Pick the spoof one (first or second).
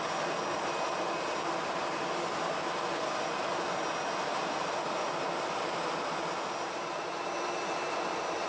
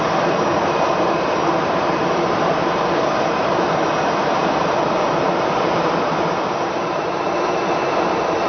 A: second